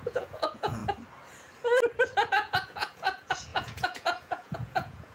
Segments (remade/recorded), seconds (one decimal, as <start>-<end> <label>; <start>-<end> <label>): 0.0-0.8 remade; 0.8-2.3 recorded; 2.3-5.1 remade